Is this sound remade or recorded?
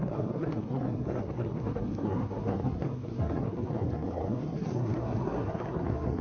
remade